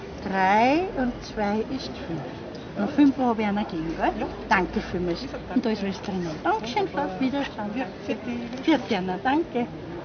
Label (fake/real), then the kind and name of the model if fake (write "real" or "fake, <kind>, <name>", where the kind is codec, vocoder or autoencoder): real